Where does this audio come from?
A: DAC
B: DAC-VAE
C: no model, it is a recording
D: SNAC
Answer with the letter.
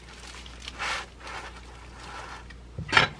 C